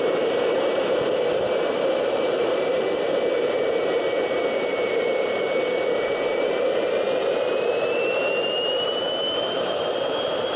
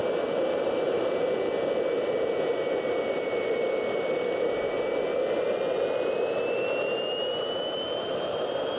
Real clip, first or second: second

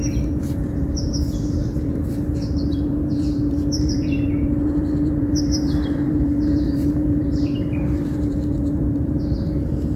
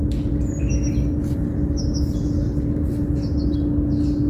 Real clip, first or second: second